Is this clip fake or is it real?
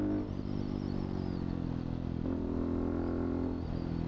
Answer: real